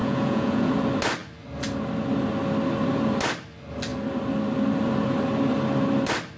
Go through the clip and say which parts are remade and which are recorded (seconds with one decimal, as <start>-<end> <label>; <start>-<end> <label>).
0.0-0.7 remade; 0.7-6.4 recorded